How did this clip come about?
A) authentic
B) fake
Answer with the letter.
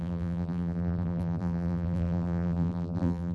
B